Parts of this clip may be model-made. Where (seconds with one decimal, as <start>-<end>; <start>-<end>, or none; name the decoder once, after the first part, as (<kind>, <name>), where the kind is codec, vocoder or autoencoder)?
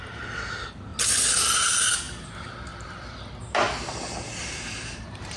none